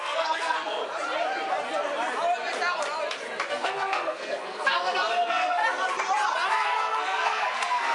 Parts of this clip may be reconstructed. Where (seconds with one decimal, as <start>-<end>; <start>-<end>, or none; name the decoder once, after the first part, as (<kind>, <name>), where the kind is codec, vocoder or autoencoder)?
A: 0.0-0.8 (codec, SNAC); 3.5-5.6; 6.5-7.9